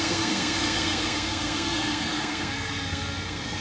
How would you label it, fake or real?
fake